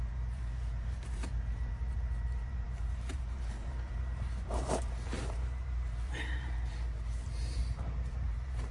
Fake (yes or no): yes